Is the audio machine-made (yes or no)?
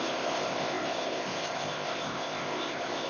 yes